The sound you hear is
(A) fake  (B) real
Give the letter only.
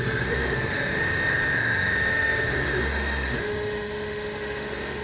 A